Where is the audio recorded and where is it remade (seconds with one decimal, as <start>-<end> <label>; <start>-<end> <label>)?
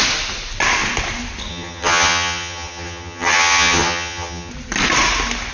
0.0-1.5 recorded; 1.5-4.5 remade; 4.5-5.5 recorded